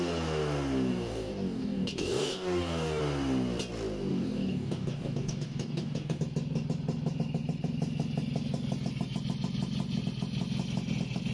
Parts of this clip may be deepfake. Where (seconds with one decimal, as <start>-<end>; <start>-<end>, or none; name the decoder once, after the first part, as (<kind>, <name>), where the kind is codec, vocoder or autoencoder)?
0.9-3.0 (codec, DAC); 4.1-6.2